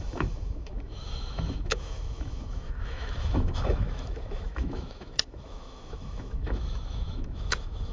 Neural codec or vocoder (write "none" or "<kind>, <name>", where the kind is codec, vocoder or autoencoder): autoencoder, DAC-VAE